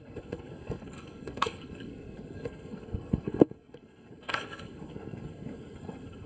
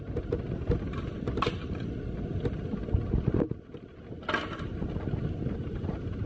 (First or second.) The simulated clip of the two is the first